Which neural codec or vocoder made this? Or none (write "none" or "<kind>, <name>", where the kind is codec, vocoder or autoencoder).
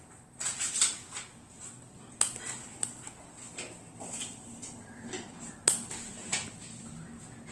none